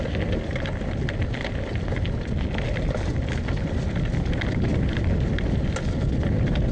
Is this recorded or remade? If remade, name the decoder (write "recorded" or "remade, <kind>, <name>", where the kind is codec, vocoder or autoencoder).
recorded